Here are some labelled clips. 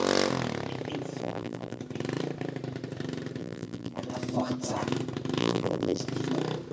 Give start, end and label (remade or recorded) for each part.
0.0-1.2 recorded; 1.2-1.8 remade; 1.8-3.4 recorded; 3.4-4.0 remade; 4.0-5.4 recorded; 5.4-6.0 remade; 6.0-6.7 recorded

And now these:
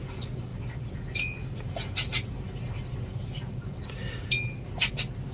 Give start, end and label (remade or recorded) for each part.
0.0-5.3 recorded